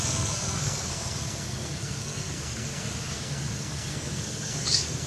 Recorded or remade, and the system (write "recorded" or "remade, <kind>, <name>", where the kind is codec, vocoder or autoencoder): remade, codec, SNAC